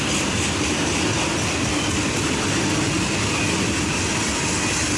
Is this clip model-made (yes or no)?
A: no